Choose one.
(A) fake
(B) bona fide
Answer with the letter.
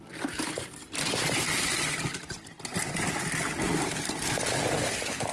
B